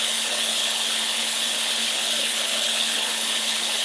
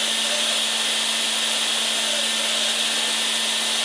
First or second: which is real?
second